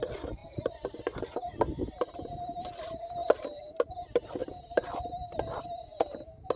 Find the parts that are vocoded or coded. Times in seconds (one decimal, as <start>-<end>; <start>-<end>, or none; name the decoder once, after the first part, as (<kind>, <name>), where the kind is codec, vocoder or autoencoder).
4.4-5.6 (vocoder, BigVGAN v2)